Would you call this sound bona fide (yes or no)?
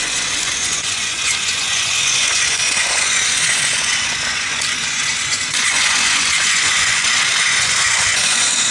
no